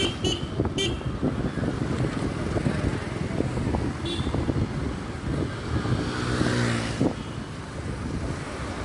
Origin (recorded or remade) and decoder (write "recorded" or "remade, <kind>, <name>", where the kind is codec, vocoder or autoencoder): recorded